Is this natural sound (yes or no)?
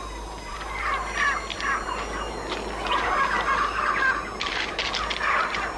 yes